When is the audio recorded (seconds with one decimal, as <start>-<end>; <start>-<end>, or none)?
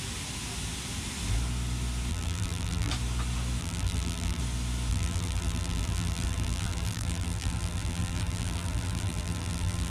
0.0-2.1; 2.9-3.6; 4.4-4.9